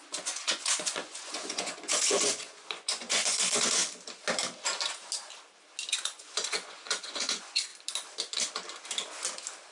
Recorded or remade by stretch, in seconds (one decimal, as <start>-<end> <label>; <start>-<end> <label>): 0.0-3.8 remade; 3.8-5.9 recorded; 5.9-7.7 remade; 7.7-9.7 recorded